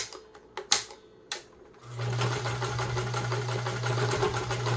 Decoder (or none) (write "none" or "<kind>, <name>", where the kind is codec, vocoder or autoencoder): none